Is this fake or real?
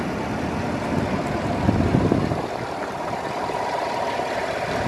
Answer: real